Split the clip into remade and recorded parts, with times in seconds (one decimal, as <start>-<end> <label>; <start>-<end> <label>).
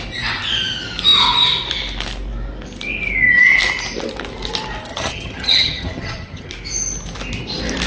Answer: 0.0-4.9 recorded; 4.9-6.5 remade; 6.5-7.9 recorded